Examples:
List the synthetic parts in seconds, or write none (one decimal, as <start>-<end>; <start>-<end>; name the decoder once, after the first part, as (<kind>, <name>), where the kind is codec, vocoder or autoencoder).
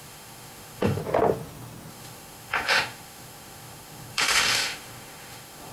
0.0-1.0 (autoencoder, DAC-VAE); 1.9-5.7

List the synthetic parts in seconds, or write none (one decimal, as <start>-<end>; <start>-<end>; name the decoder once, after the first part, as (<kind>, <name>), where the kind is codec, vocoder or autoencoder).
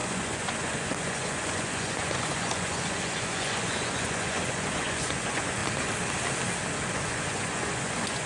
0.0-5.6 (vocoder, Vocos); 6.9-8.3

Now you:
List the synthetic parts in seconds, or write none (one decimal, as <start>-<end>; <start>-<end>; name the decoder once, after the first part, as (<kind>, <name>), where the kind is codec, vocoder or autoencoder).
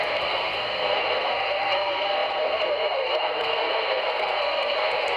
0.0-5.2 (codec, SNAC)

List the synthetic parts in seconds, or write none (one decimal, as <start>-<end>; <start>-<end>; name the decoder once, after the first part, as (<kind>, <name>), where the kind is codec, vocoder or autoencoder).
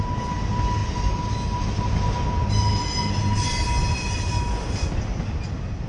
none